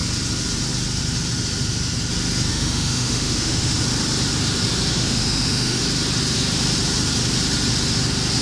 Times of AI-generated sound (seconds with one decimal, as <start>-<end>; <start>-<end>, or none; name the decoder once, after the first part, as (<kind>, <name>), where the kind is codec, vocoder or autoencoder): 2.5-3.8 (autoencoder, DAC-VAE); 4.9-5.8